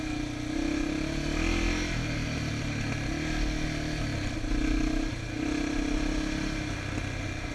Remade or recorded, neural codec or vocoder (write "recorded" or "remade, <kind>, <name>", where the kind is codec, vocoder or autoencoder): recorded